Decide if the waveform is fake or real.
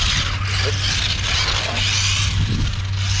real